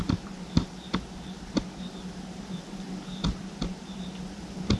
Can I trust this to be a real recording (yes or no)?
yes